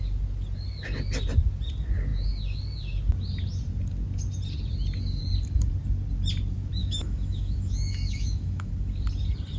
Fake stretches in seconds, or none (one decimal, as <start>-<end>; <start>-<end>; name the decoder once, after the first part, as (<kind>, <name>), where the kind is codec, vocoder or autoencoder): 6.8-8.7 (autoencoder, DAC-VAE)